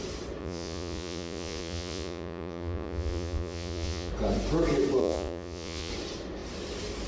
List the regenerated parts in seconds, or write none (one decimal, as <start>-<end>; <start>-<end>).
0.4-4.1; 5.0-5.9